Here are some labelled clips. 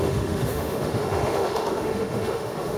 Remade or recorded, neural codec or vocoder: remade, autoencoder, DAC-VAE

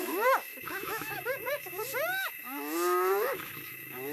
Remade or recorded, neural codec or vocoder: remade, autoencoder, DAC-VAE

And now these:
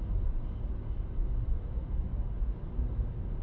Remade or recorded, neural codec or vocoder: recorded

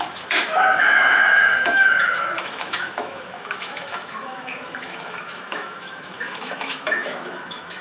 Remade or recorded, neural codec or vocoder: remade, autoencoder, DAC-VAE